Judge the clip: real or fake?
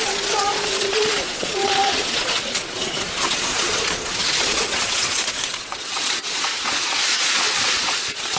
fake